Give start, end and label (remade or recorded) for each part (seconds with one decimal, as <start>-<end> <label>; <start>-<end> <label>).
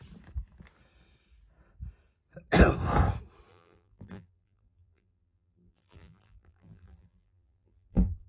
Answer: 0.0-3.5 recorded; 3.5-8.3 remade